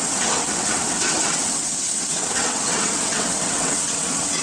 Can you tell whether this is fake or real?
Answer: fake